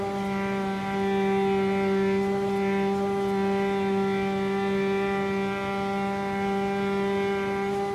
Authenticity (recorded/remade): recorded